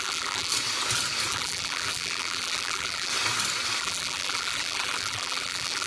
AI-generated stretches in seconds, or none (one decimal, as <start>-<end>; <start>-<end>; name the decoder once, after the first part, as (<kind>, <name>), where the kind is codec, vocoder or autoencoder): 0.0-0.5 (vocoder, BigVGAN v2); 1.3-3.1; 3.8-5.9

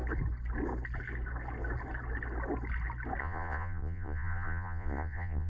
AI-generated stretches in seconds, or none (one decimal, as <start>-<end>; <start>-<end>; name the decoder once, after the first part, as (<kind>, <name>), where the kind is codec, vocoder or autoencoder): 3.2-5.5 (vocoder, Vocos)